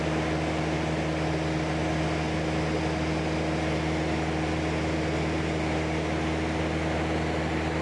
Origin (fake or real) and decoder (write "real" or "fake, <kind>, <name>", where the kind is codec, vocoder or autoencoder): real